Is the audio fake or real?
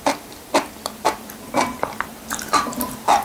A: fake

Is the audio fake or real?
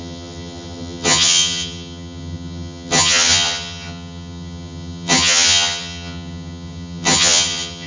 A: fake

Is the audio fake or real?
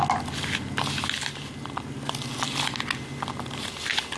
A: real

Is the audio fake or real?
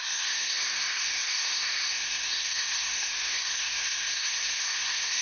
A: fake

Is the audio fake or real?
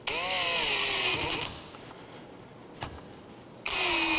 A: real